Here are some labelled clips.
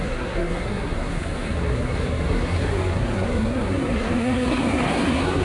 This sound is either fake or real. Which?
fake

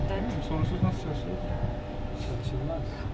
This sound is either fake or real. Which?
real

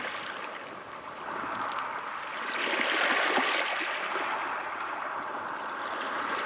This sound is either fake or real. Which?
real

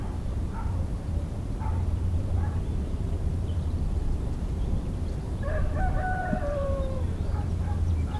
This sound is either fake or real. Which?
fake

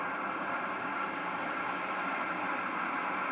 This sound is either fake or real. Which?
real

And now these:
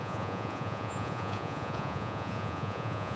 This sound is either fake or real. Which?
fake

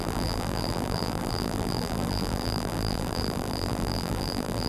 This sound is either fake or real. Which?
fake